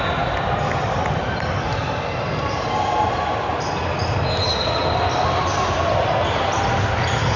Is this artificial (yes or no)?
no